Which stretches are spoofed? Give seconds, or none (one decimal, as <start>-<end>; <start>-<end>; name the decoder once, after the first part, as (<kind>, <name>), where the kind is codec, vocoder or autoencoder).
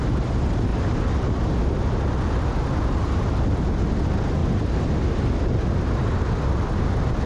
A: none